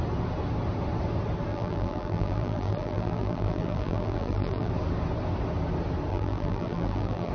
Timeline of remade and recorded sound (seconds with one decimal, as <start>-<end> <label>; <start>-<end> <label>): 0.0-1.5 recorded; 1.5-4.7 remade; 4.7-6.1 recorded; 6.1-7.3 remade